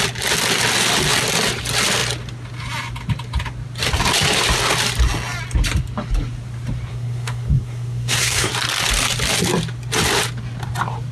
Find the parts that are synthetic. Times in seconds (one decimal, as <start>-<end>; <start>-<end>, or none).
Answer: 6.9-8.5